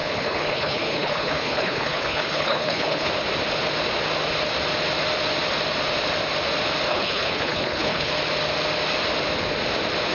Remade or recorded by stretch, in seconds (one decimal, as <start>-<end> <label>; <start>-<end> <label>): 0.0-3.1 remade; 3.1-6.9 recorded; 6.9-8.1 remade; 8.1-10.1 recorded